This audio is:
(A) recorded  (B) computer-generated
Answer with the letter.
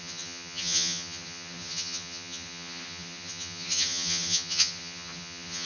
B